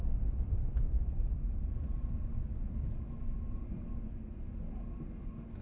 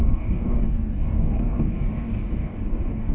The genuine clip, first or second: first